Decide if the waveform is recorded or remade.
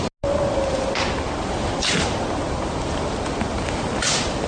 recorded